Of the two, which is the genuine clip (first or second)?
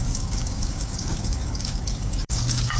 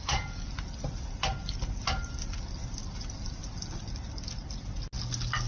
second